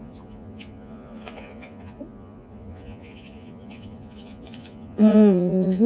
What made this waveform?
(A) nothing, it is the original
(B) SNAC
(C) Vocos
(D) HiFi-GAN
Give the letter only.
C